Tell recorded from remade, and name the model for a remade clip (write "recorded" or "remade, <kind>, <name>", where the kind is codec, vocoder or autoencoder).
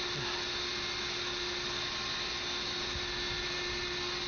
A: recorded